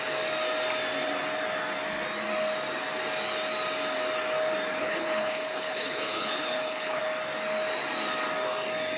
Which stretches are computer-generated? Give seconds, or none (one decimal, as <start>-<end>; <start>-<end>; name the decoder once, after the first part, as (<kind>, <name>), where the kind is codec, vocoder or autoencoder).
4.8-7.0 (codec, HILCodec)